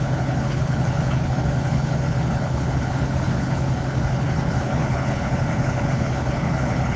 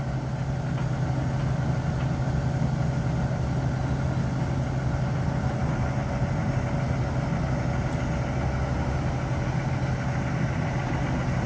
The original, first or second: second